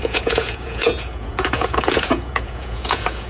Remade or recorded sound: remade